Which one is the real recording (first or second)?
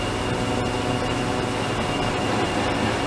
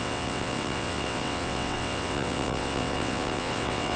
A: first